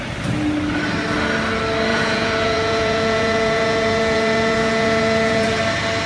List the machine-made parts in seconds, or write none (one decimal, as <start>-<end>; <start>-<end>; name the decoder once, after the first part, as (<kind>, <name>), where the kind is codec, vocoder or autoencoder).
1.9-5.6 (vocoder, Vocos)